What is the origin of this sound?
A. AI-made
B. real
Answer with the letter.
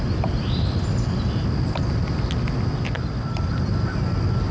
B